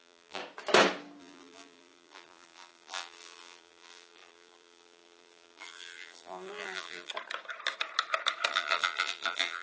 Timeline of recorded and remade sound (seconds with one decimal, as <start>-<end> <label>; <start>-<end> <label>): 0.0-0.4 remade; 0.4-1.2 recorded; 1.2-7.1 remade; 7.1-8.5 recorded; 8.5-9.6 remade